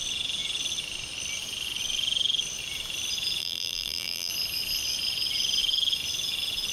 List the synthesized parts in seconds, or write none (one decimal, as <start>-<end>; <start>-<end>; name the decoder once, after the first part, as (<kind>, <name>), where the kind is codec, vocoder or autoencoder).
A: 3.4-4.3 (vocoder, BigVGAN v2)